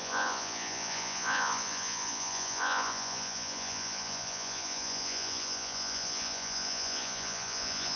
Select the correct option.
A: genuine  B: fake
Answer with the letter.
B